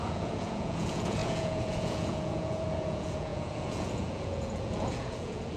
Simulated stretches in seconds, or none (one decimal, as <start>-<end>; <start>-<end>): 0.0-5.6